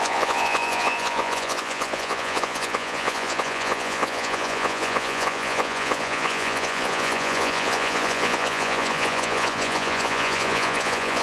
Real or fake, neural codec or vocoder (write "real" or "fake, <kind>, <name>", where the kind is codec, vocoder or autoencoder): fake, vocoder, Vocos